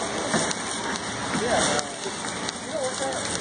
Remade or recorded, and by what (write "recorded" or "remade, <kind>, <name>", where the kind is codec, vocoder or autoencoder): recorded